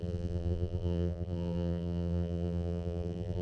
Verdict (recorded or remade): remade